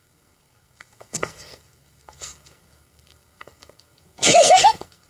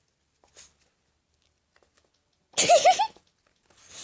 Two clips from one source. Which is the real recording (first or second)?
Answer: second